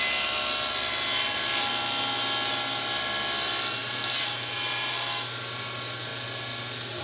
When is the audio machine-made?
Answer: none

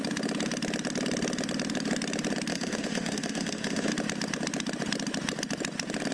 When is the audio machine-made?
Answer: 2.5-3.9